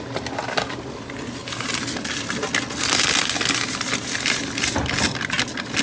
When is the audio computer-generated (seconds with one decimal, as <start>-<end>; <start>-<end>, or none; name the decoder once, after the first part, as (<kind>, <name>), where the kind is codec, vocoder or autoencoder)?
none